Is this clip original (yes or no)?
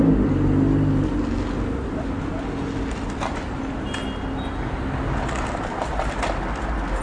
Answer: yes